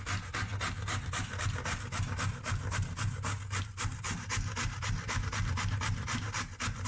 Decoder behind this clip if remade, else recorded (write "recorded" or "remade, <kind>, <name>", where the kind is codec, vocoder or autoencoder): recorded